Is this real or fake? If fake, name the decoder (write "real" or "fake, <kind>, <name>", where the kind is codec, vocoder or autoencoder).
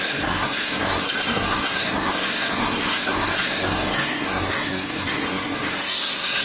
fake, codec, SNAC